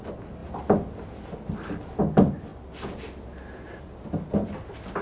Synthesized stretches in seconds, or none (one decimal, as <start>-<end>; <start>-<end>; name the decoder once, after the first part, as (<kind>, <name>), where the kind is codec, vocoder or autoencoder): none